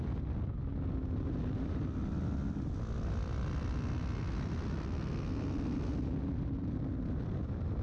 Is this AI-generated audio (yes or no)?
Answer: no